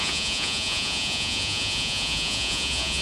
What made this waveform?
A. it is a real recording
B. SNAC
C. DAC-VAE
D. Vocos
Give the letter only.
D